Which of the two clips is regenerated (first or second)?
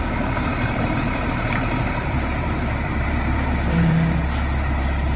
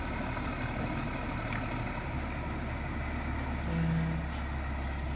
first